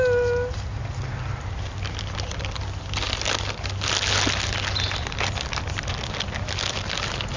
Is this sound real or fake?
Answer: real